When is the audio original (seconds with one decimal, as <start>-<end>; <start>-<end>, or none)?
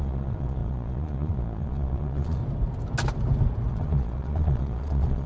2.4-3.7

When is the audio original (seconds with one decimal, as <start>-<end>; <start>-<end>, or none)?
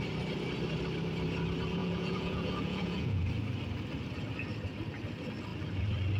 0.0-1.8; 3.2-6.2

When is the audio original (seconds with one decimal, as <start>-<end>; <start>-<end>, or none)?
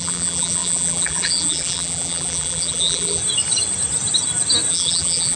3.2-4.7